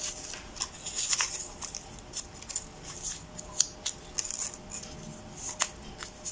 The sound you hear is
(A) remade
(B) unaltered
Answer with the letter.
B